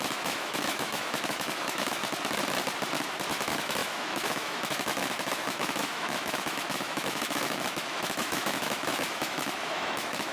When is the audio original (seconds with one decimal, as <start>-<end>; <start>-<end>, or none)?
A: 2.0-3.3